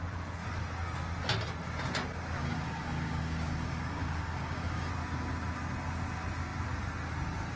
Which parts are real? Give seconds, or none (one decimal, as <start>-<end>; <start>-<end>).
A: 0.0-2.4; 4.9-7.6